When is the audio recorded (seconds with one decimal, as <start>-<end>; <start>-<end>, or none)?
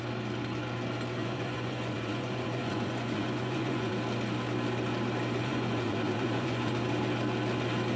0.0-1.2; 3.9-5.4; 6.7-8.0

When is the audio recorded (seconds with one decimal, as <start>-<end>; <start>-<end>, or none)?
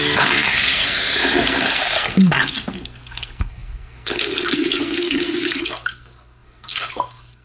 none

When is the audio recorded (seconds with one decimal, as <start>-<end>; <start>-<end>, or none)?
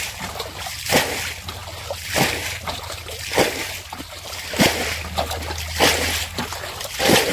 0.0-7.3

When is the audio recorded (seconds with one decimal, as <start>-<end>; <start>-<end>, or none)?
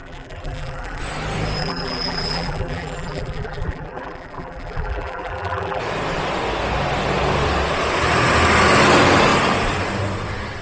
1.0-1.6; 5.8-10.6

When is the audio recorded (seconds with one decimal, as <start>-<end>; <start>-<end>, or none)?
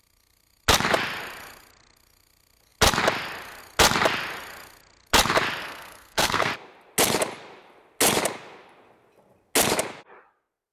0.0-5.6; 6.5-10.7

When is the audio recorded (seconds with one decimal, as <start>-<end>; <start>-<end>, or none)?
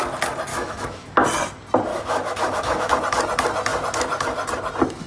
0.0-0.5; 1.1-1.9; 2.9-5.1